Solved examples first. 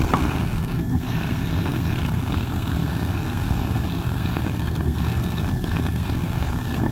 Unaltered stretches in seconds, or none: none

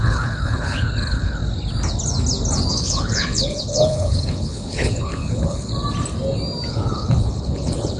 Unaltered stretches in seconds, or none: 1.4-2.7; 5.7-6.7